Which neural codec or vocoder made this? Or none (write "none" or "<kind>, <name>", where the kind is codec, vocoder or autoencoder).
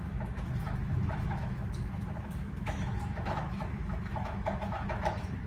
autoencoder, DAC-VAE